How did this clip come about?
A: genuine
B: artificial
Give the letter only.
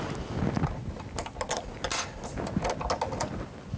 A